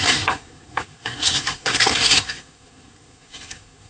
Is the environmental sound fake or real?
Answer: fake